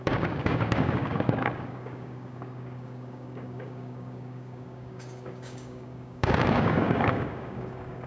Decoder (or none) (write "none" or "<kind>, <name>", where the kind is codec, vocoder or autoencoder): codec, DAC